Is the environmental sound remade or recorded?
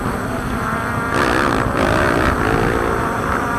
recorded